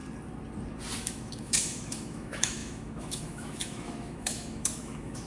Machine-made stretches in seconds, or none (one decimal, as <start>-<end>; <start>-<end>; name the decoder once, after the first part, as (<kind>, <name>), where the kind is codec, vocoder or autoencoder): 1.0-5.3 (autoencoder, DAC-VAE)